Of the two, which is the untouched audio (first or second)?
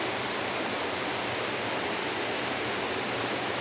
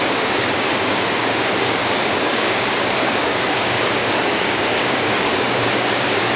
first